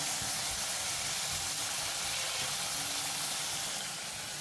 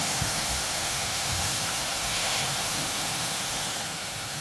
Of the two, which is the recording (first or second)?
first